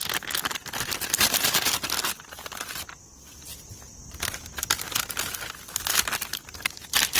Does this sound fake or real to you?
real